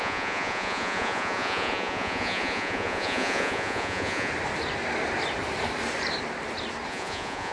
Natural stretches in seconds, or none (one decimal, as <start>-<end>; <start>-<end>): 4.3-6.9